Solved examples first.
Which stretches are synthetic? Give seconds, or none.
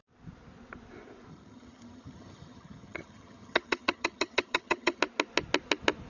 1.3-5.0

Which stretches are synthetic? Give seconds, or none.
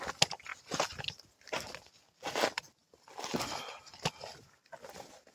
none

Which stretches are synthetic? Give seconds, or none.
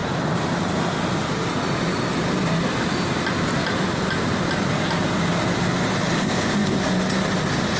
6.2-6.8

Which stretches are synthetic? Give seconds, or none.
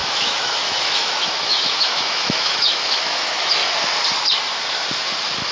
0.0-3.6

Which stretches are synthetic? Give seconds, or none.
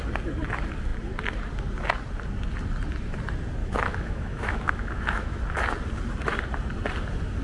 3.6-5.4